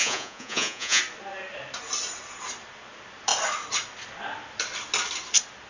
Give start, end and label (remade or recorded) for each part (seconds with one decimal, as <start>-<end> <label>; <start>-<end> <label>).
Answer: 0.0-1.0 remade; 1.0-5.7 recorded